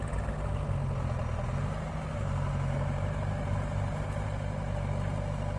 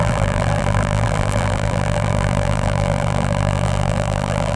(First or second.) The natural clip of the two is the first